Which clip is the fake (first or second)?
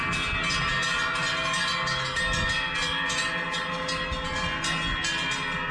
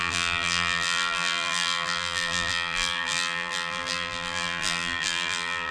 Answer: second